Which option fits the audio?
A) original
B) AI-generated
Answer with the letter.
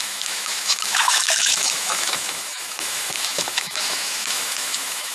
B